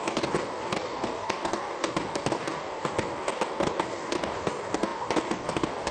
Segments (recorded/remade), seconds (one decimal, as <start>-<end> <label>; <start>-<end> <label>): 0.0-5.9 remade